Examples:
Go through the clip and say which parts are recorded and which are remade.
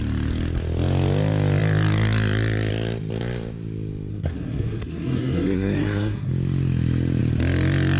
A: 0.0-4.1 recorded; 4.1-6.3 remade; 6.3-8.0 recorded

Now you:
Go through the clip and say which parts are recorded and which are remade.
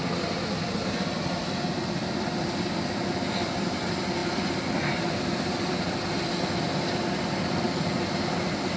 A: 0.0-8.8 recorded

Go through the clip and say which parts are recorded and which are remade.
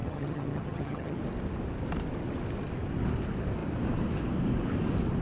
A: 0.0-1.2 remade; 1.2-5.2 recorded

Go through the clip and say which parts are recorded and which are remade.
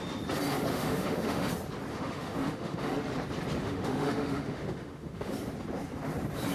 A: 0.0-0.7 recorded; 0.7-1.5 remade; 1.5-1.9 recorded; 1.9-2.9 remade; 2.9-3.6 recorded; 3.6-5.3 remade; 5.3-6.5 recorded